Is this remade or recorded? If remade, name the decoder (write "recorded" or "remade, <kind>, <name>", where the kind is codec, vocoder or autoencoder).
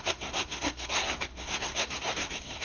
remade, codec, SNAC